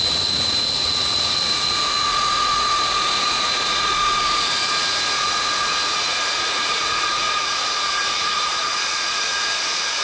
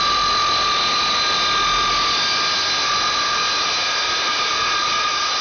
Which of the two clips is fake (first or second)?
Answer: first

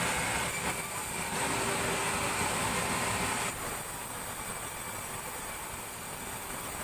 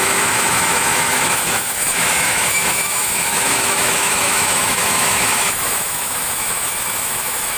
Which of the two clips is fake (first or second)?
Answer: second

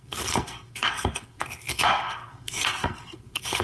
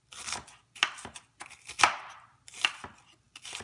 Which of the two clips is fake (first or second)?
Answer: first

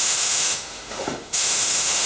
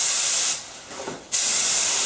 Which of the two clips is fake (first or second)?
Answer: first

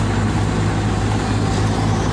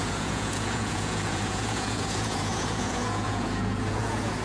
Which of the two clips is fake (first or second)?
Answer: second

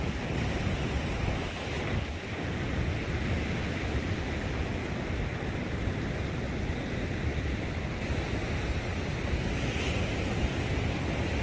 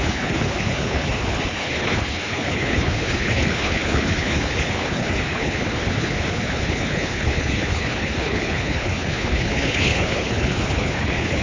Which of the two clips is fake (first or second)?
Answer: second